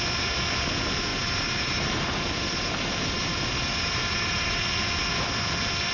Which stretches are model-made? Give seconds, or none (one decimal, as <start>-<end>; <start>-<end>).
1.1-4.6